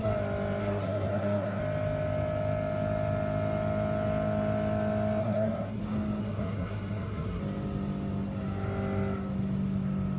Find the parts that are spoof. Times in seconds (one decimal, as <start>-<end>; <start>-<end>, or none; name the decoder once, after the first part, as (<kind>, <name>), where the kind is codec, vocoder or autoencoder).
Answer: 0.6-1.6 (codec, SNAC); 5.2-5.8; 6.2-7.4